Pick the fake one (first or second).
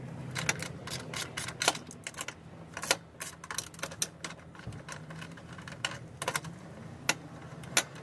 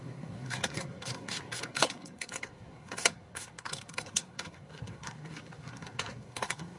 second